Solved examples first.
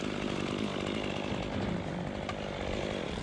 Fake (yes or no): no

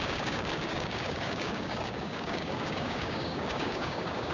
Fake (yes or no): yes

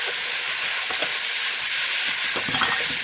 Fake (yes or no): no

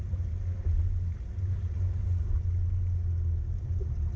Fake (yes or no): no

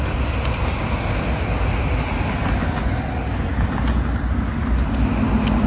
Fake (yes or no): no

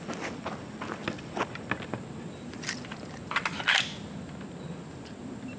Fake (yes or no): no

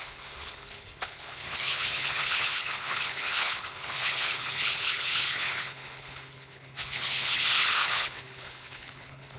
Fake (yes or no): yes